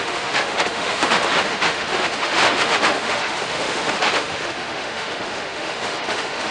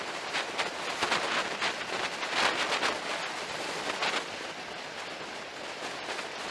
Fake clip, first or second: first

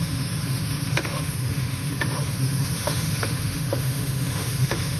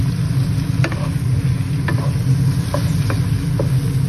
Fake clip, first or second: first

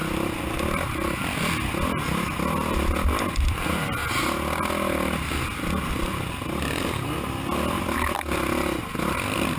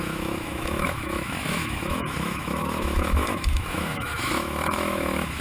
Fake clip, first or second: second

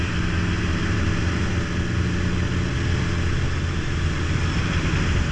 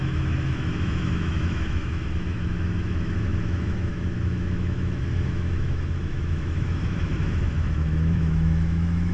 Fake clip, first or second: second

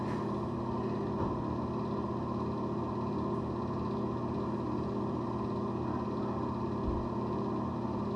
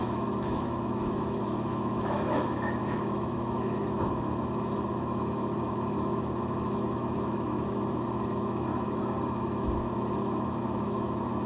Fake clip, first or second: second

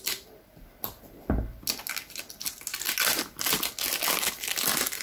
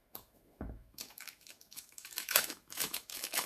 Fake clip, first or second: second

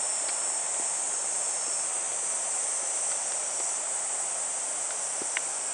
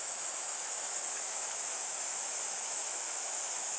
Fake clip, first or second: second